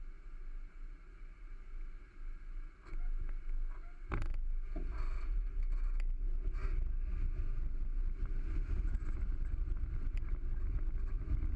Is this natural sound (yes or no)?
yes